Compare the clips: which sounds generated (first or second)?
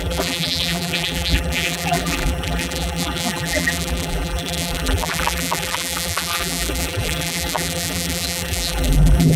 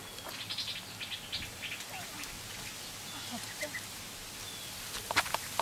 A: first